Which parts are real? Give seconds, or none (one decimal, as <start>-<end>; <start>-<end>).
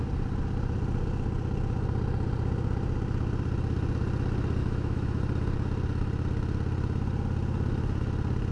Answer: 0.0-4.6; 5.2-8.5